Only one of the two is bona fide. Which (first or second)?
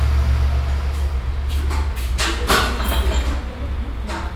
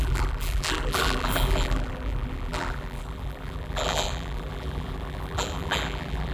first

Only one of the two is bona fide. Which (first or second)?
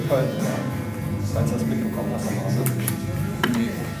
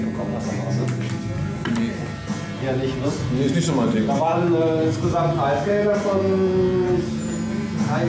second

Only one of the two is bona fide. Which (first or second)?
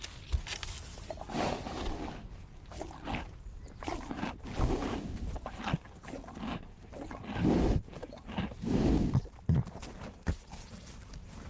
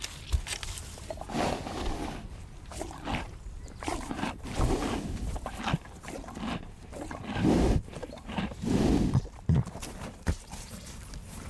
first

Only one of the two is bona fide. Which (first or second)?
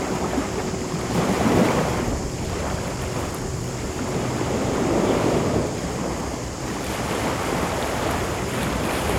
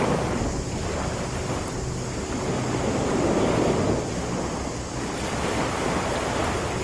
second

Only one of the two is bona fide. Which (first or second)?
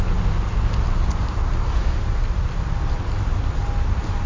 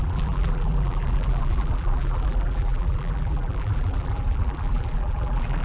first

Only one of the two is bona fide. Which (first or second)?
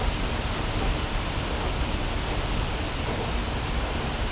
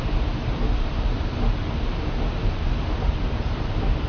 first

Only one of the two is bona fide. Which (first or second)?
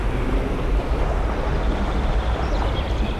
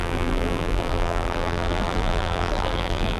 first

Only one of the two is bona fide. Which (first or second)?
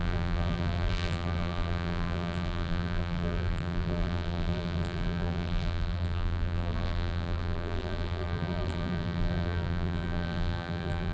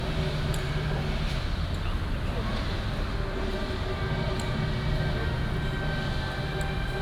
second